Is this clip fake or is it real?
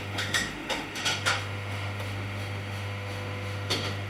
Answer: fake